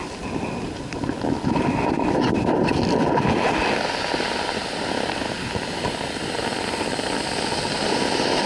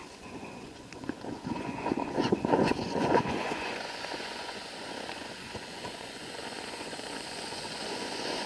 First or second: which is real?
first